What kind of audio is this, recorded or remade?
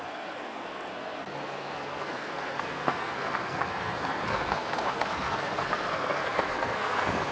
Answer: remade